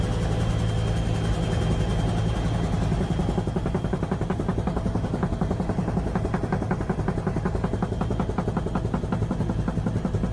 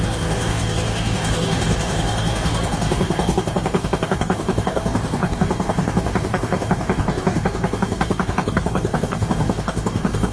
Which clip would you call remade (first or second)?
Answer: second